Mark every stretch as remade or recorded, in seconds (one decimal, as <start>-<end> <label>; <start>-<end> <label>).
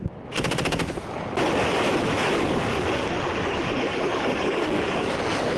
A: 0.0-3.0 recorded; 3.0-5.6 remade